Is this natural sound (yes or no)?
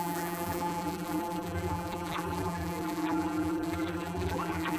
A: no